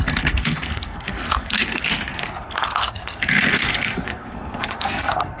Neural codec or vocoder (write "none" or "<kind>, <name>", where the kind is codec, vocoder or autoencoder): codec, SNAC